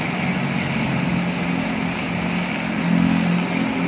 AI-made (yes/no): no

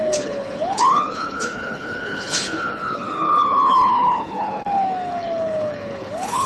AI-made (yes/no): yes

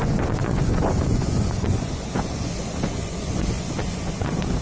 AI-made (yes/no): yes